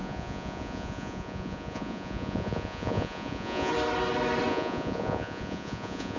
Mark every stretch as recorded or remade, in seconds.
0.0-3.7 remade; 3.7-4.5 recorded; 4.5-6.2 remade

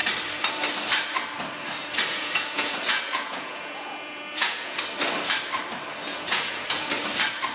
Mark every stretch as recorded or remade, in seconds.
0.0-2.1 recorded; 2.1-4.8 remade; 4.8-6.1 recorded; 6.1-6.9 remade; 6.9-7.5 recorded

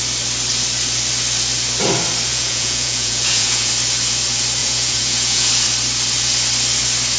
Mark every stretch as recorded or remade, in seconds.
0.0-2.3 recorded; 2.3-3.7 remade; 3.7-4.6 recorded; 4.6-5.5 remade; 5.5-7.2 recorded